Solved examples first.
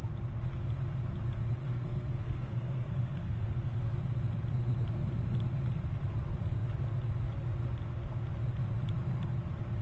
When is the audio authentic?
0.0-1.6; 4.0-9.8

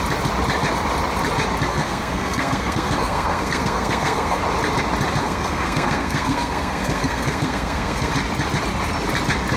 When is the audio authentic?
0.0-1.7; 4.4-5.2; 8.1-9.6

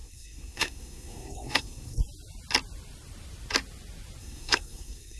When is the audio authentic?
2.0-4.2

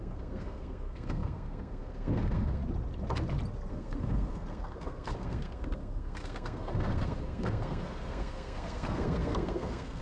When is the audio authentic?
2.6-3.7

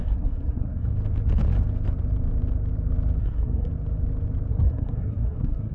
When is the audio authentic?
0.9-3.2; 3.7-4.5

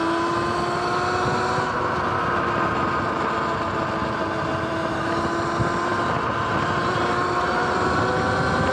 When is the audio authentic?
0.0-8.7